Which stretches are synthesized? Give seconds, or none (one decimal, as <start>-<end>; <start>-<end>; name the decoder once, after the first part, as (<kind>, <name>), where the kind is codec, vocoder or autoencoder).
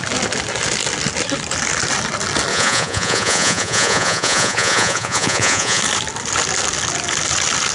2.5-5.8 (vocoder, Vocos)